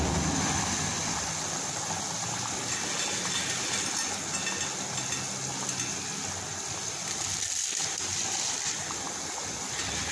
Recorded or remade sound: recorded